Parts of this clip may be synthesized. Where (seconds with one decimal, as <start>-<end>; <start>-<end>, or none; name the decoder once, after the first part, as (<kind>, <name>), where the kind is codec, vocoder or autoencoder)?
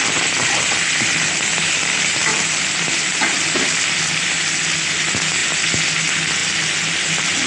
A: 2.3-3.2 (vocoder, BigVGAN v2)